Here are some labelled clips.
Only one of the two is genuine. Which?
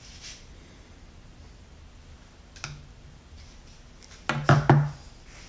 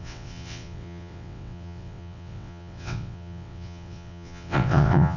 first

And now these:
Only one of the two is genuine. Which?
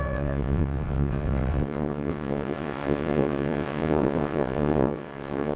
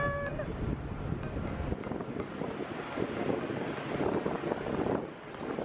second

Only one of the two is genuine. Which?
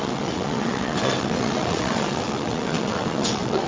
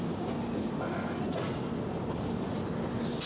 second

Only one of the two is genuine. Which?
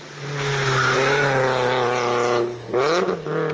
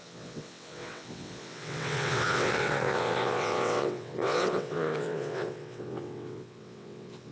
first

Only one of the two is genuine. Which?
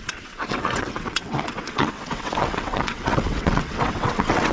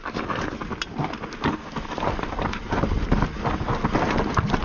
second